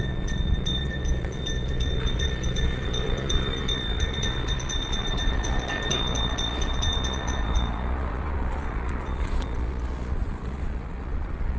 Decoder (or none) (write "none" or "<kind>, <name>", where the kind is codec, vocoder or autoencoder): vocoder, Vocos